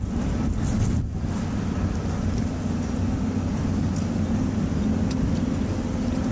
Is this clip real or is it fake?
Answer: real